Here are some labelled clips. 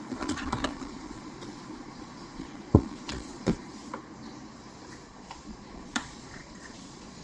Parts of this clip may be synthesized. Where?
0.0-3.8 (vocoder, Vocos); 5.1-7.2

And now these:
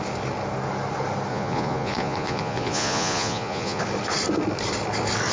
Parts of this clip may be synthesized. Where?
1.3-3.8 (vocoder, Vocos)

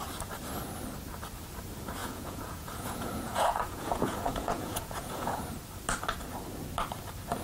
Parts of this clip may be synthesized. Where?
2.0-5.4 (vocoder, Vocos)

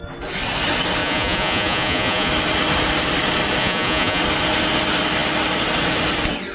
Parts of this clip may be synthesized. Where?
1.0-2.3 (vocoder, Vocos); 3.6-4.2

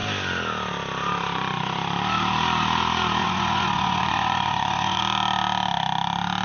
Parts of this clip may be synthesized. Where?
3.2-5.0 (vocoder, Vocos)

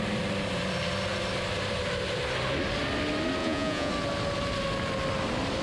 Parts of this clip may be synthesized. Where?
3.4-3.9 (vocoder, Vocos)

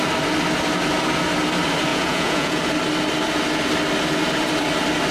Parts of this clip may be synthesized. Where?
1.9-2.6 (vocoder, Vocos)

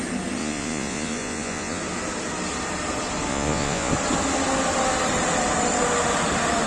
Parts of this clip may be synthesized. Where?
0.4-1.8 (vocoder, Vocos); 3.3-3.9